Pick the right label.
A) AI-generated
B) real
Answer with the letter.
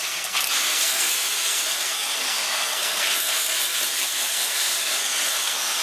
A